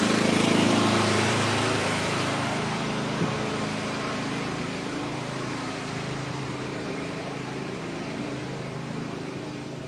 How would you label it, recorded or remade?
remade